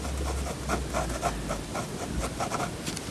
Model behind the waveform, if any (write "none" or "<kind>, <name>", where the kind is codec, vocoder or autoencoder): none